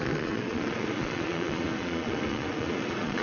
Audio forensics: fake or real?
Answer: fake